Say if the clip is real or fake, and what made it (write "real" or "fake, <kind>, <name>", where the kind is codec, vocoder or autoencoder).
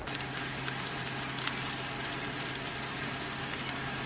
real